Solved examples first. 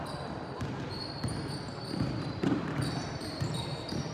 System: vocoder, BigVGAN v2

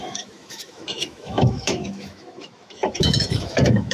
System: autoencoder, DAC-VAE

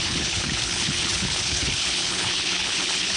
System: codec, HILCodec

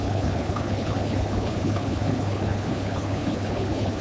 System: codec, HILCodec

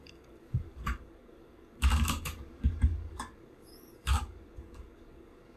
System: codec, DAC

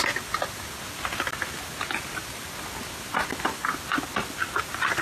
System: none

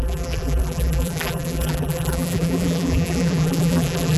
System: vocoder, BigVGAN v2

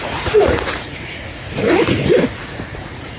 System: vocoder, Vocos